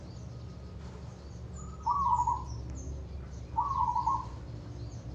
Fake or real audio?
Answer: real